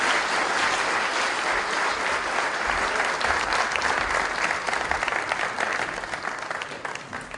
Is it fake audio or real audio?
real